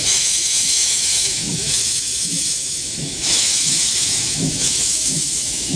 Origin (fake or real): fake